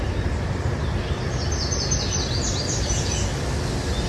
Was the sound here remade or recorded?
recorded